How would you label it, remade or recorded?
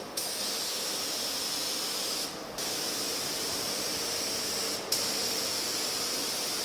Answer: recorded